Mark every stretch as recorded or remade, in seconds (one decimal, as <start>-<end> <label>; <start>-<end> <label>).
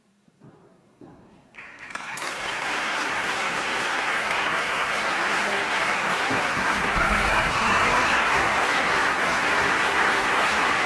0.0-10.9 remade